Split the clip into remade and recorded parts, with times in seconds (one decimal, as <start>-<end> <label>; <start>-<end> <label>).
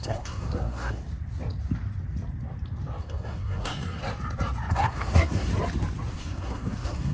0.0-1.0 remade; 1.0-3.0 recorded; 3.0-4.0 remade; 4.0-4.7 recorded; 4.7-5.5 remade; 5.5-6.1 recorded; 6.1-7.1 remade